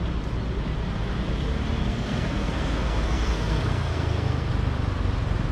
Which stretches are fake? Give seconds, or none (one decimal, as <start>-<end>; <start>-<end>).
1.8-4.5

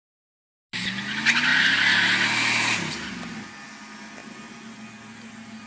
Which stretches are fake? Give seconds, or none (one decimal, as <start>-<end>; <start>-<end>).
none